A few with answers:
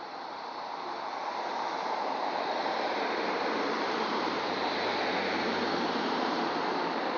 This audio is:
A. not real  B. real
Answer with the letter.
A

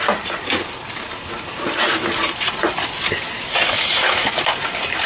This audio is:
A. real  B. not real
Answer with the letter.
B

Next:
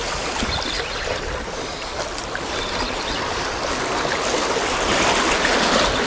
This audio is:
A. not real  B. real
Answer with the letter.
B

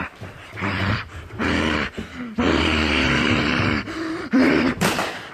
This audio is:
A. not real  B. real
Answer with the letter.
A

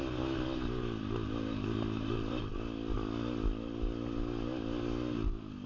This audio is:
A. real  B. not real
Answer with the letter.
A